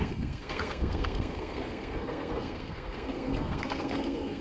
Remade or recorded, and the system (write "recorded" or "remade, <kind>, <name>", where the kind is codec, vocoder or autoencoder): remade, codec, SNAC